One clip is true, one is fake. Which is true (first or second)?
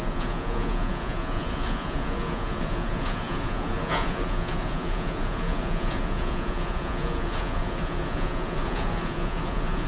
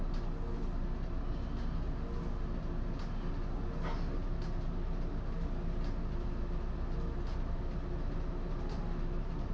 second